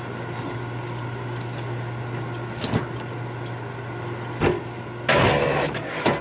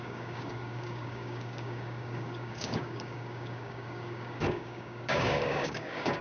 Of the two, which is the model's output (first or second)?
second